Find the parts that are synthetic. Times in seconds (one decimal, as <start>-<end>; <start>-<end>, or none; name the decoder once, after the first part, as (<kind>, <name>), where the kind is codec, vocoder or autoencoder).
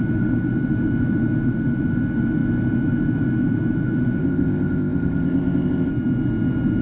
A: 4.2-5.9 (codec, ZipCodec)